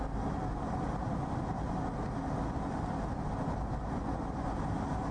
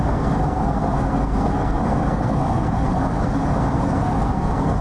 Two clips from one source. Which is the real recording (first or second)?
first